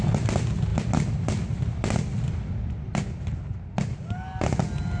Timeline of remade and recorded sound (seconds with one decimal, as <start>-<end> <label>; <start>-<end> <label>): 0.0-5.0 recorded